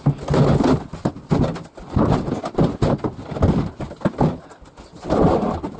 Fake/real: real